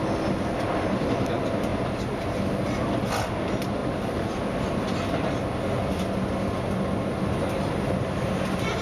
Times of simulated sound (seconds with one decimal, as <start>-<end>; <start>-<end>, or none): none